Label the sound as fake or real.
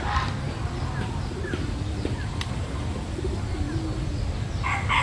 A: real